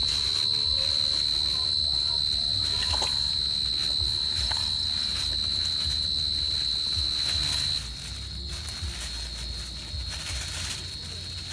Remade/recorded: recorded